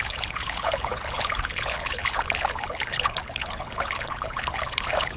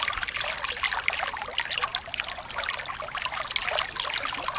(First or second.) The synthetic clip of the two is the first